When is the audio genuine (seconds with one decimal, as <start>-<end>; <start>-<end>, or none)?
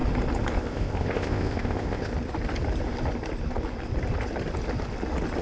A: 0.0-0.6; 2.1-5.4